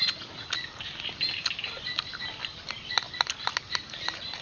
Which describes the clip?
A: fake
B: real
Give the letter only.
B